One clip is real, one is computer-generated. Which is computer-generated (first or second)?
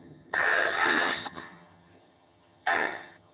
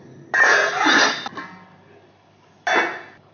first